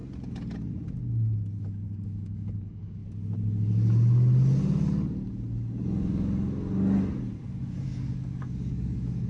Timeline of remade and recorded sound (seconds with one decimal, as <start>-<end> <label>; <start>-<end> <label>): 0.0-1.6 recorded; 1.6-3.0 remade; 3.0-7.7 recorded; 7.7-9.3 remade